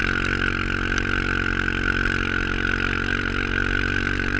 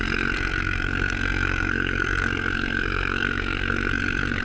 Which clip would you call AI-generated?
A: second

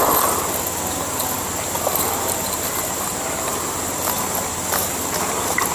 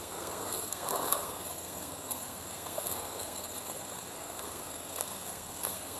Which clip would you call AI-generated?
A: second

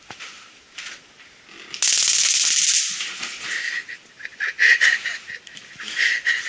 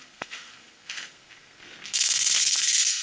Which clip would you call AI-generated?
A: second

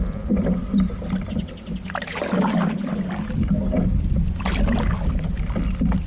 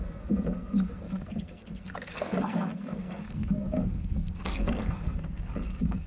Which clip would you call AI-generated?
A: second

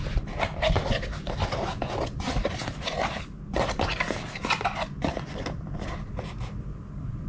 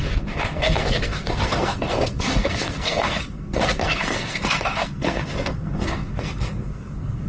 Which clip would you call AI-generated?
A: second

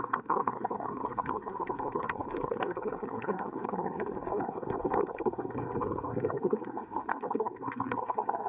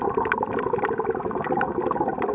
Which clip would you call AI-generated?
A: first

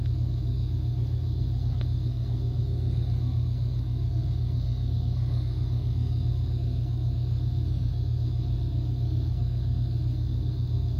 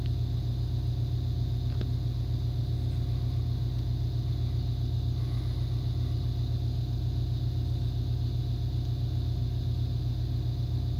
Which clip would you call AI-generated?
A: first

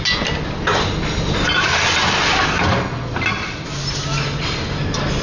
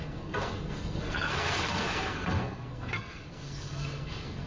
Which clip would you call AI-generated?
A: second